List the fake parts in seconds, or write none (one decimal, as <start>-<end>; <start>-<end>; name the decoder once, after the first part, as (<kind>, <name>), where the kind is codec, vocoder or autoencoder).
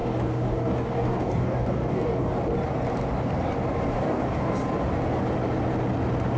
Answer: 0.0-2.3 (codec, DAC); 3.9-4.5